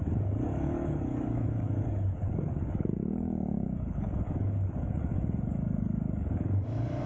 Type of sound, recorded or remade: remade